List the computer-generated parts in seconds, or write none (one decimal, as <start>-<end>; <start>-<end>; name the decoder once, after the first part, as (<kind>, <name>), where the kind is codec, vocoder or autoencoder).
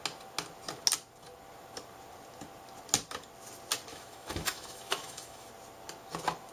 3.9-5.5 (autoencoder, DAC-VAE)